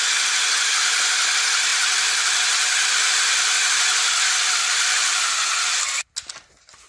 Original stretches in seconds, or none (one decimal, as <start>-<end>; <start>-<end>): 0.0-6.9